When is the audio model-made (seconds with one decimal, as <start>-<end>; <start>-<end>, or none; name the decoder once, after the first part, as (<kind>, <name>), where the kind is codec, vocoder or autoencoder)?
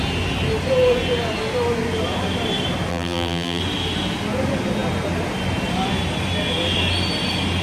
2.9-3.6 (vocoder, BigVGAN v2)